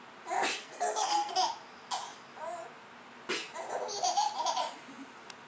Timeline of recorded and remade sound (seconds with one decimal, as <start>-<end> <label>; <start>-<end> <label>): 0.0-0.6 recorded; 0.6-1.3 remade; 1.3-5.5 recorded